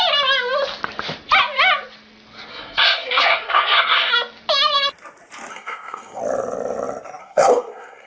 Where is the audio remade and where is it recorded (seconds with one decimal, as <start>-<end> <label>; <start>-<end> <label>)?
0.0-2.5 recorded; 2.5-4.1 remade; 4.1-5.5 recorded; 5.5-6.2 remade; 6.2-7.2 recorded; 7.2-8.1 remade